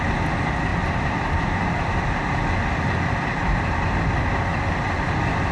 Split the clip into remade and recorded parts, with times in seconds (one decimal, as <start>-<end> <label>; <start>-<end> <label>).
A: 0.0-5.5 recorded